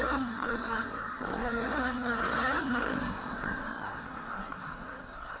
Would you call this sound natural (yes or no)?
no